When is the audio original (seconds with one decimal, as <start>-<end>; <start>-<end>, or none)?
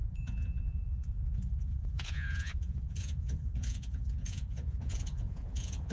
none